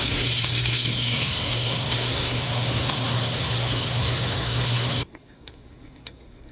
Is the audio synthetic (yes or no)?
yes